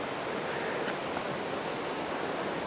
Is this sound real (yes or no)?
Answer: yes